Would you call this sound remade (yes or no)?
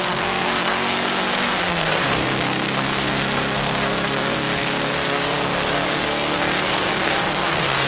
yes